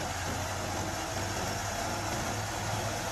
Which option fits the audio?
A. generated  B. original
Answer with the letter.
B